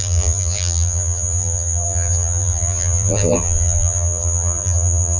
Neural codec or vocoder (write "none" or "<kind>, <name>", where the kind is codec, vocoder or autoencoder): vocoder, BigVGAN v2